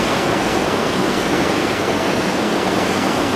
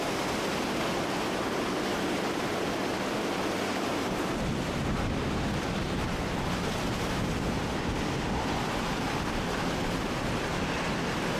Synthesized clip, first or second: first